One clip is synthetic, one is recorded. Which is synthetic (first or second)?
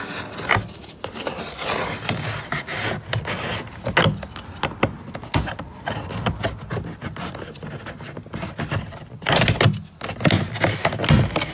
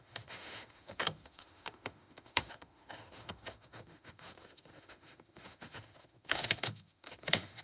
second